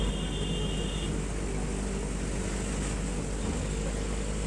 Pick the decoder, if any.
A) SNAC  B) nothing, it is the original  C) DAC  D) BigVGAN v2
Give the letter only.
B